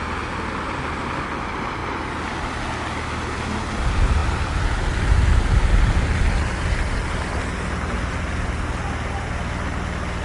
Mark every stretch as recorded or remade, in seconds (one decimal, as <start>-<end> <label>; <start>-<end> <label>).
0.0-10.2 recorded